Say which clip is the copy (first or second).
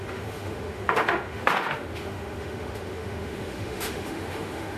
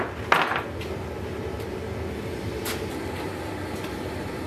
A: first